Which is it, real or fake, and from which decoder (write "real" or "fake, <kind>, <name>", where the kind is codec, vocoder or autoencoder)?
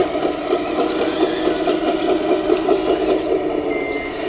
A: real